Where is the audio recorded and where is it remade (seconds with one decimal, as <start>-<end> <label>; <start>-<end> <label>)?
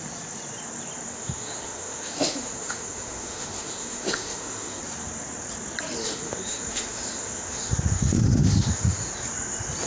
0.0-1.1 recorded; 1.1-4.8 remade; 4.8-6.0 recorded; 6.0-9.1 remade; 9.1-9.9 recorded